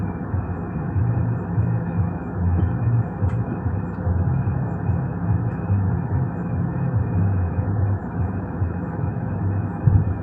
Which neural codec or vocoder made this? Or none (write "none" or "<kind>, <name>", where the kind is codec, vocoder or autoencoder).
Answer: autoencoder, DAC-VAE